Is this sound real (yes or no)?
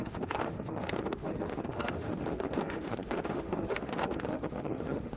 no